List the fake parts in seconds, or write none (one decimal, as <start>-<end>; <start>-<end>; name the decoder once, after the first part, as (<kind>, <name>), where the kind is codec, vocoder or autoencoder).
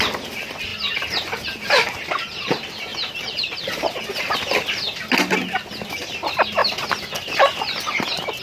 0.7-1.9 (vocoder, BigVGAN v2); 2.9-4.0